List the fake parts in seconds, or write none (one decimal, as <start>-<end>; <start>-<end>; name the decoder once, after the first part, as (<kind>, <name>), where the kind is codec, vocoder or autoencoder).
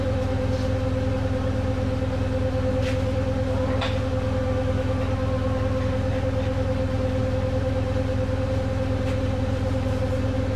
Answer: none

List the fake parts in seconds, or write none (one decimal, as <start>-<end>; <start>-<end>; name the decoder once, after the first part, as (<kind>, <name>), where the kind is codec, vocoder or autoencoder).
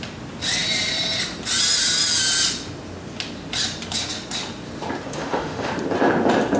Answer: 5.1-5.7 (autoencoder, DAC-VAE)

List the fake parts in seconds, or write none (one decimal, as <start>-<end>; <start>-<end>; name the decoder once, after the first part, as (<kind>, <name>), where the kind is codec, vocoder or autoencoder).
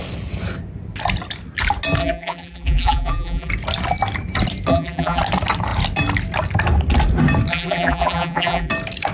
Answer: 2.0-3.5 (vocoder, BigVGAN v2); 4.7-5.2; 7.5-8.7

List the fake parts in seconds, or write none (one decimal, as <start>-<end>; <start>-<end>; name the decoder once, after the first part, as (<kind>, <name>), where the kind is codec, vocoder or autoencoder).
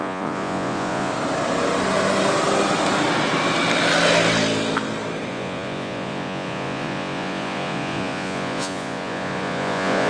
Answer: 0.0-1.1 (vocoder, Vocos); 5.3-10.1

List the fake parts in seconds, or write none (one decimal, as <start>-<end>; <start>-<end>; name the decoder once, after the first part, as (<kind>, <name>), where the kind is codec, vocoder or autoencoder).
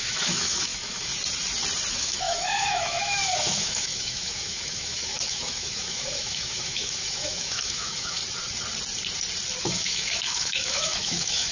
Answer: 0.0-1.1 (autoencoder, DAC-VAE); 1.9-8.2; 9.6-11.5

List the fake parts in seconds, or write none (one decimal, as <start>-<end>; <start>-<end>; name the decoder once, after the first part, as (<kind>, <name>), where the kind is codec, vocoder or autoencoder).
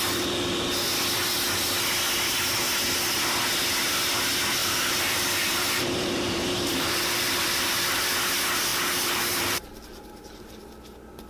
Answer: 4.6-8.1 (vocoder, BigVGAN v2); 8.7-10.6